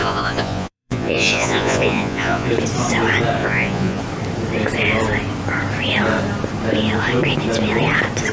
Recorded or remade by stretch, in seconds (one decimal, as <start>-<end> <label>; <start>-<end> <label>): 0.0-2.5 remade; 2.5-3.4 recorded; 3.4-4.0 remade; 4.0-8.3 recorded